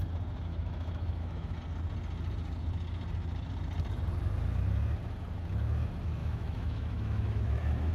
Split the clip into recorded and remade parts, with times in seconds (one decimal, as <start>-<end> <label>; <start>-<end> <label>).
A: 0.0-0.5 recorded; 0.5-1.5 remade; 1.5-6.2 recorded; 6.2-7.9 remade